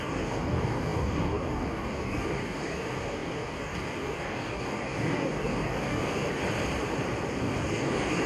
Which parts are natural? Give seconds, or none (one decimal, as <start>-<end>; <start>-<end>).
6.4-7.3